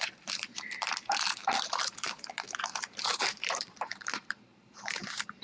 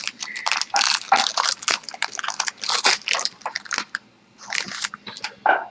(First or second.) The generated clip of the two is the first